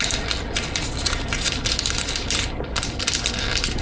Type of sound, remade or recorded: recorded